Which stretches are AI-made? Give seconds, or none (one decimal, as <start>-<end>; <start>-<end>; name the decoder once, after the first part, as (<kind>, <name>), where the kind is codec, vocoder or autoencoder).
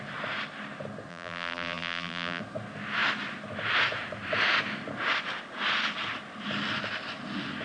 1.1-2.4 (vocoder, BigVGAN v2)